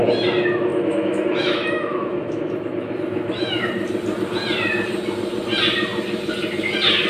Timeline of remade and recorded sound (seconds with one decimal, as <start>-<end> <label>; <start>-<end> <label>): 0.0-0.7 recorded; 0.7-3.7 remade; 3.7-7.1 recorded